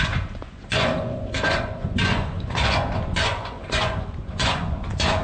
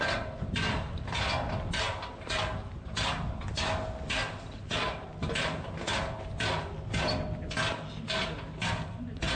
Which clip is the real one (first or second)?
second